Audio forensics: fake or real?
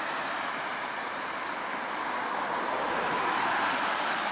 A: real